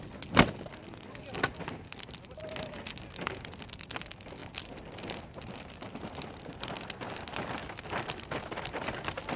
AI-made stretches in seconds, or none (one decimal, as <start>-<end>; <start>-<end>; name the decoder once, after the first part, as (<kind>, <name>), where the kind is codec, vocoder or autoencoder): none